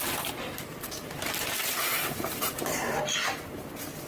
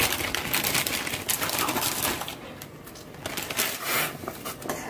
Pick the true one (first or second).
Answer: second